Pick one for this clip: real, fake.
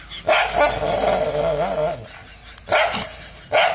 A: real